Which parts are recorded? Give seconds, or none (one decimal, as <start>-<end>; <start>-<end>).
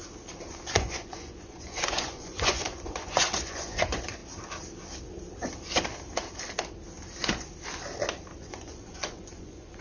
0.0-0.5; 4.2-8.4